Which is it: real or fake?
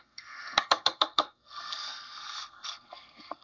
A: fake